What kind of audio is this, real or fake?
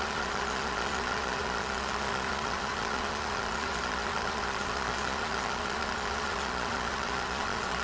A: fake